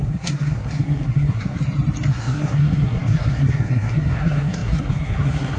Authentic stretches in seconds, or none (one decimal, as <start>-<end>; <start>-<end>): 1.6-2.1